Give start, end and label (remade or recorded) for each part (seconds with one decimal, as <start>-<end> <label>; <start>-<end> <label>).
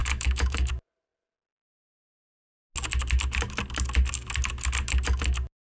0.0-0.7 remade; 0.7-5.6 recorded